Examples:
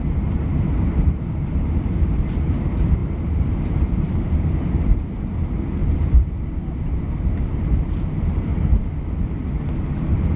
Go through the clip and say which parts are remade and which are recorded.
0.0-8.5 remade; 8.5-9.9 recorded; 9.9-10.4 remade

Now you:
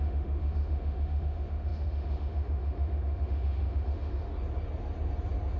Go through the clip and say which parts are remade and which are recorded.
0.0-4.3 remade; 4.3-5.6 recorded

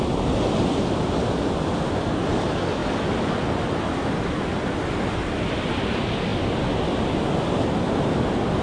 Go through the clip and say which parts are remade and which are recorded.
0.0-8.6 recorded